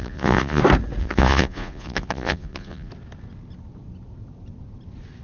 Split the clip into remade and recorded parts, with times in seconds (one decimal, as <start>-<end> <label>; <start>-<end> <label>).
0.0-0.6 remade; 0.6-1.0 recorded; 1.0-2.9 remade; 2.9-5.2 recorded